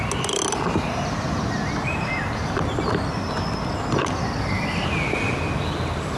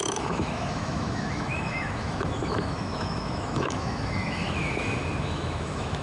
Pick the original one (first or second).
first